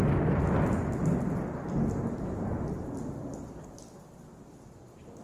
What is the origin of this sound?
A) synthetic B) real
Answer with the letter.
A